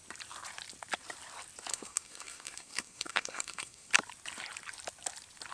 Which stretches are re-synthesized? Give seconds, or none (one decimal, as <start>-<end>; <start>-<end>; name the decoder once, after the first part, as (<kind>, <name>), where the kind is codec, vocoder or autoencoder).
1.7-3.9 (codec, SNAC)